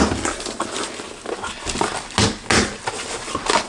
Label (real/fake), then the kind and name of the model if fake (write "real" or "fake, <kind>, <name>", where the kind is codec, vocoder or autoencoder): real